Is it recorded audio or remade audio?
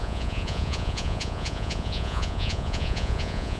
remade